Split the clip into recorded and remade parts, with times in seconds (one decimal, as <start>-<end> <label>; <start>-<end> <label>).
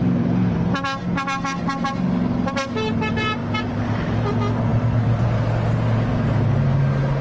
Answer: 0.0-7.2 recorded